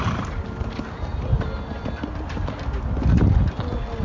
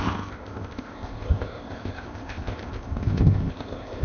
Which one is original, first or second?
first